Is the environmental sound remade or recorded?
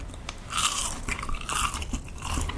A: remade